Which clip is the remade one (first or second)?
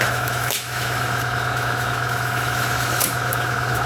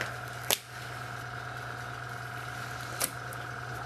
first